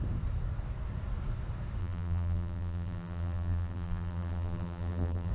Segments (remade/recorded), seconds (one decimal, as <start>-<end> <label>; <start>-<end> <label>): 0.0-1.8 recorded; 1.8-5.3 remade